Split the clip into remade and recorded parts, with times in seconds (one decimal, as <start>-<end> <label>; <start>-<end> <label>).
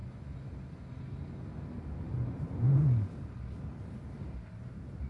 0.0-5.1 recorded